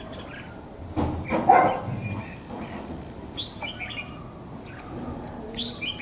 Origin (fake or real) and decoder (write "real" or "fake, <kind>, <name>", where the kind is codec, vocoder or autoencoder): real